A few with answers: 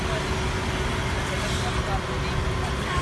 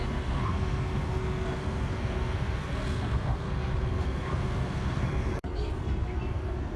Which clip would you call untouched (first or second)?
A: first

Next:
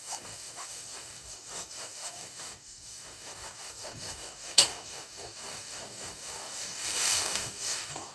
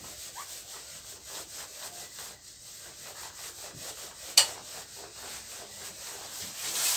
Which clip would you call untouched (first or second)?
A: second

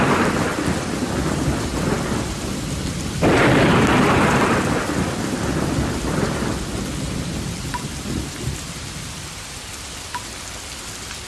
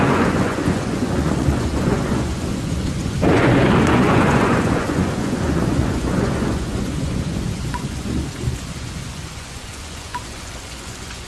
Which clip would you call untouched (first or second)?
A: first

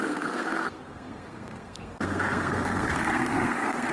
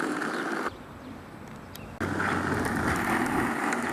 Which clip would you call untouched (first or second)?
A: second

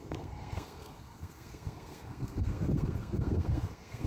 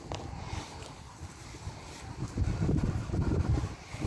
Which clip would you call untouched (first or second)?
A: second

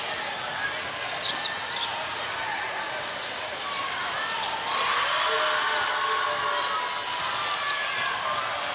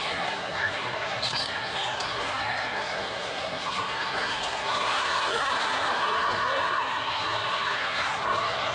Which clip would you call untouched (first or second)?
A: first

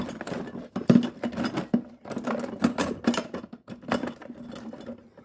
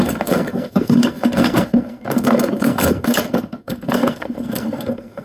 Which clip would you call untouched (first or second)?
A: first